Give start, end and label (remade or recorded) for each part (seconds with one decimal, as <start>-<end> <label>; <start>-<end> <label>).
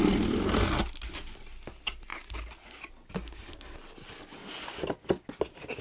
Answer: 0.0-5.8 recorded